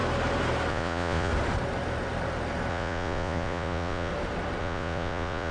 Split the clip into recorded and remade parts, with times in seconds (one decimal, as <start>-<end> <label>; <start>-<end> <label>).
0.0-0.7 recorded; 0.7-1.3 remade; 1.3-2.7 recorded; 2.7-4.1 remade; 4.1-4.6 recorded; 4.6-5.5 remade